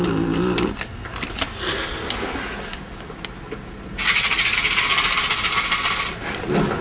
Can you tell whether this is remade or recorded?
recorded